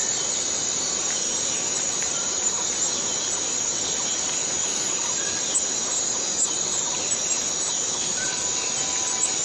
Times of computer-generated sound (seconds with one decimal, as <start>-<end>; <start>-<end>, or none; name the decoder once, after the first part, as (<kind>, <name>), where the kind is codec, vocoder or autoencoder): none

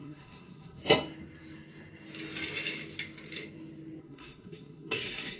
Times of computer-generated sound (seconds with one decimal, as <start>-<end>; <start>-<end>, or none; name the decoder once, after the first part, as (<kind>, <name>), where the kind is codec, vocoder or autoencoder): 0.0-0.8 (codec, SNAC); 4.0-5.4

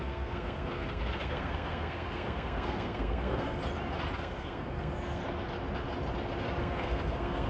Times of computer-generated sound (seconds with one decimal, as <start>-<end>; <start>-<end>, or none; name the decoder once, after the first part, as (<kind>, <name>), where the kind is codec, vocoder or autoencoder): 0.0-3.6 (codec, SNAC); 4.2-5.2; 6.6-7.5

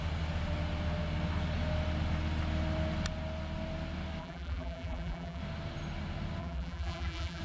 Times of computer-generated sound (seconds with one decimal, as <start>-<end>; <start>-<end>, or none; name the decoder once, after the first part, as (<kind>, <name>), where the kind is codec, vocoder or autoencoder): 4.2-5.4 (vocoder, BigVGAN v2); 6.4-7.4